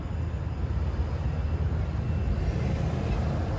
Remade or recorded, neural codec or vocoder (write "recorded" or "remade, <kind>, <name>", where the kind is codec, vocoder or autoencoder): recorded